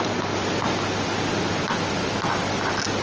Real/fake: real